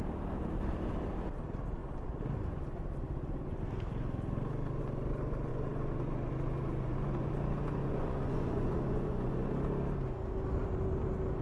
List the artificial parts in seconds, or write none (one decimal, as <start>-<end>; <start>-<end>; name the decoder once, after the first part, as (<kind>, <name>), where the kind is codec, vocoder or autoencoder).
5.5-6.3 (vocoder, Vocos); 6.7-7.3; 7.8-9.5